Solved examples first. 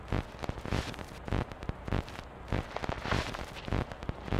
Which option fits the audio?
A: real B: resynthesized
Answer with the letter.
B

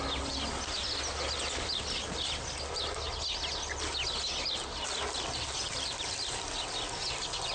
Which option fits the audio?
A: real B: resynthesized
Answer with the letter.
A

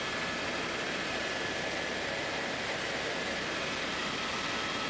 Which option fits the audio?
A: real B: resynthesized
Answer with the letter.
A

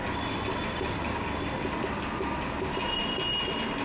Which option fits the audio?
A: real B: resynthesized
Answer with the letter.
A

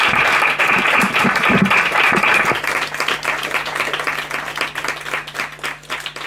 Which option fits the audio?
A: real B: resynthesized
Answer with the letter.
A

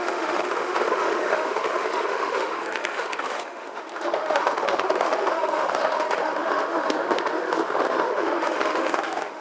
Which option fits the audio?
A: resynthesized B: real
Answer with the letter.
A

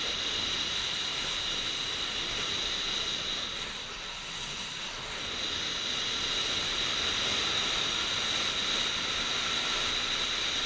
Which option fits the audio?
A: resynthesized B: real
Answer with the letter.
B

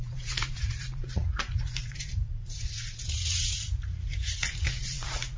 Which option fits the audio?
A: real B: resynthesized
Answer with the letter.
B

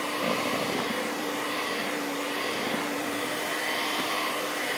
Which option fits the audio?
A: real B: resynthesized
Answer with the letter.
B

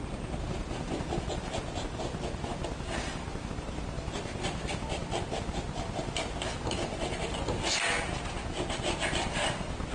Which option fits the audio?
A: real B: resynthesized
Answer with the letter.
A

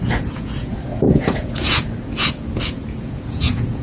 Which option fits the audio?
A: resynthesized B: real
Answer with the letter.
A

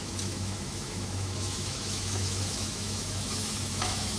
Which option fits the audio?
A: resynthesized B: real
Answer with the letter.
A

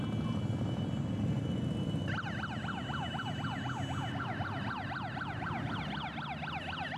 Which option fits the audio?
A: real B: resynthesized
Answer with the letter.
A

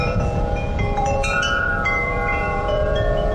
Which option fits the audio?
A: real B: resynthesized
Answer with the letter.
B